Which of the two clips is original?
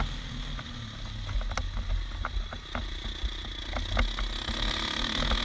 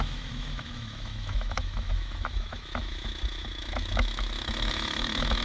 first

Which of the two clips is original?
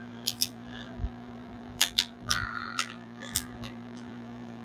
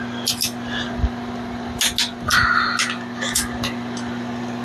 second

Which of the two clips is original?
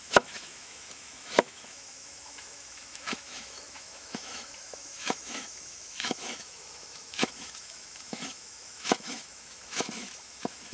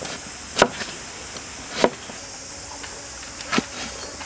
second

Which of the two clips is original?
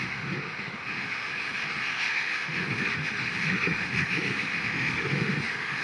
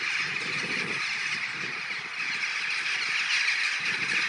second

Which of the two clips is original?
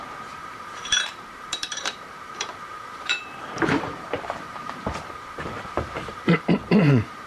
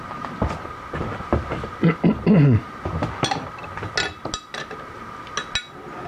second